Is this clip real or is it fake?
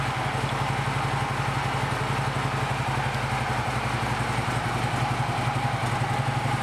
real